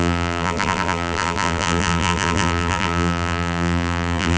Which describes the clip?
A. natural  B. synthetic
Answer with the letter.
B